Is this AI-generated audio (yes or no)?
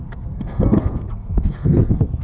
yes